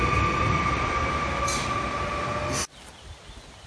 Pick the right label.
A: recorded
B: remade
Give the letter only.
A